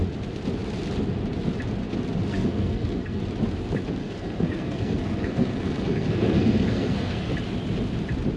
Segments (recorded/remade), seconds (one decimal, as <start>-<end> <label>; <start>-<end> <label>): 0.0-2.3 recorded; 2.3-3.2 remade; 3.2-4.0 recorded; 4.0-7.3 remade; 7.3-8.4 recorded